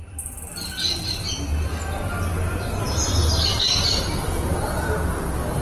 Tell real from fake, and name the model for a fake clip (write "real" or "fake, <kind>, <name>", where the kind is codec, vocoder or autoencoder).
real